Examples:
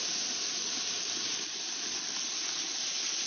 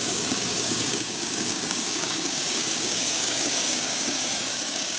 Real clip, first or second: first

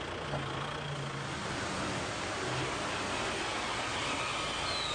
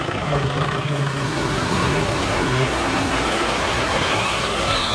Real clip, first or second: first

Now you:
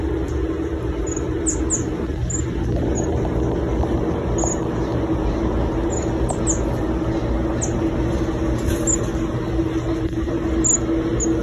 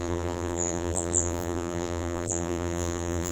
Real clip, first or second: first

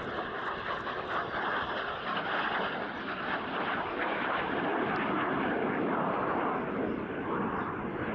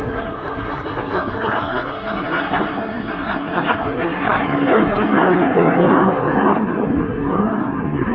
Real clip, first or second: first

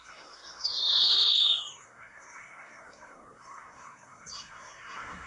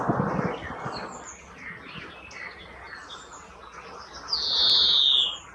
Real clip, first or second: second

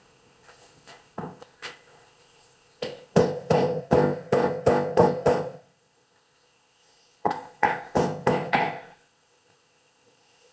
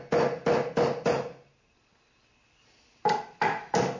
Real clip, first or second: second